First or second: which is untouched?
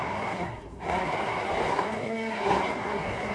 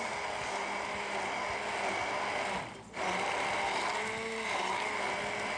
second